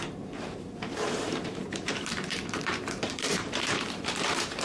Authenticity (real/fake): fake